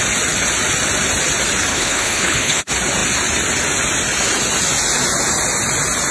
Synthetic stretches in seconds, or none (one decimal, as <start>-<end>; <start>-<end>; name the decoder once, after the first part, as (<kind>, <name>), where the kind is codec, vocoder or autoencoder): 1.7-2.6 (codec, HILCodec)